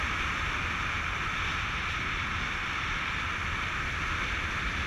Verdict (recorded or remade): recorded